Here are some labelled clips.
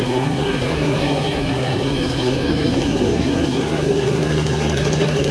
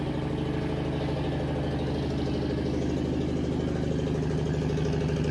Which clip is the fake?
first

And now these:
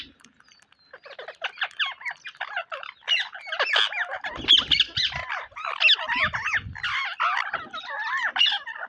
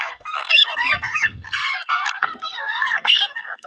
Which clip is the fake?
second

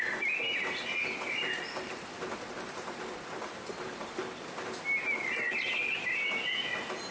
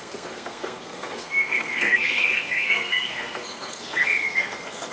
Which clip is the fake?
second